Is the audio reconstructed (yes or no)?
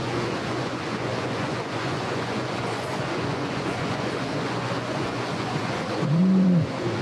yes